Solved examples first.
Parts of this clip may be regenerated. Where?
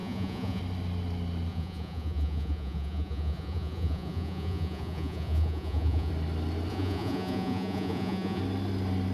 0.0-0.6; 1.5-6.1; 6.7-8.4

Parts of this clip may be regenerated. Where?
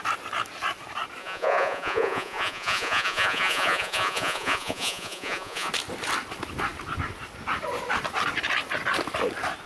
1.2-5.7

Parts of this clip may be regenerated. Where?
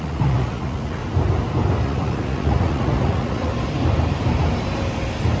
0.0-1.0; 1.8-3.5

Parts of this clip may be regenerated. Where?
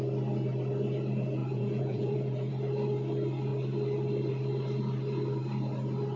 1.4-2.5